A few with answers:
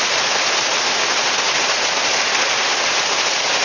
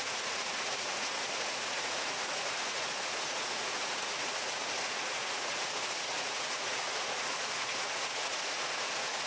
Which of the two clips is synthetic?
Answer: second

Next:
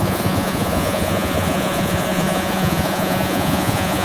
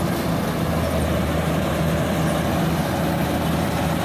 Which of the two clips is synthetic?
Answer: first